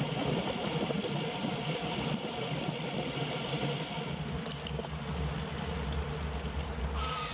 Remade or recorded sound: recorded